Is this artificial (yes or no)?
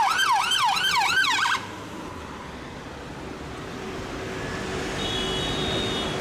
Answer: no